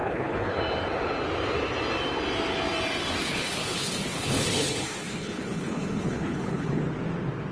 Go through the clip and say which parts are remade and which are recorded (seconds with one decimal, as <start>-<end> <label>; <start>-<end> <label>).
0.0-0.6 remade; 0.6-3.2 recorded; 3.2-6.8 remade; 6.8-7.5 recorded